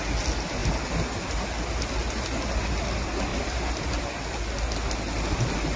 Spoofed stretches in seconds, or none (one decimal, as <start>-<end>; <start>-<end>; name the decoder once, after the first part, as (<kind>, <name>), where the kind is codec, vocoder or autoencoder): 3.3-3.9 (vocoder, BigVGAN v2)